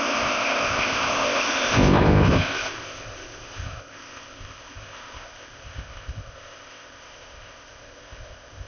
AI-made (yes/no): yes